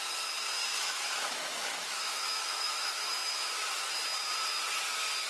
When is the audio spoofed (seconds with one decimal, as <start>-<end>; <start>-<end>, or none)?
0.7-3.9